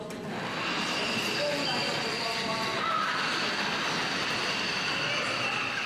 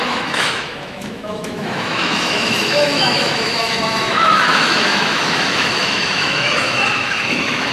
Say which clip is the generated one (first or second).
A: second